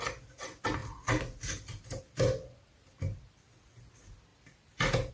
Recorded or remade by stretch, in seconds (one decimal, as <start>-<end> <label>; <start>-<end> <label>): 0.0-0.8 recorded; 0.8-2.0 remade; 2.0-4.3 recorded; 4.3-5.1 remade